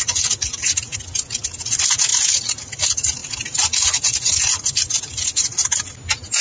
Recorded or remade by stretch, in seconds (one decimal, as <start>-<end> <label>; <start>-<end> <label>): 0.0-6.4 recorded